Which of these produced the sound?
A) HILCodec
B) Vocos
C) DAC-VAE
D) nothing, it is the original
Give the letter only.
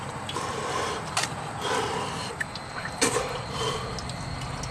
D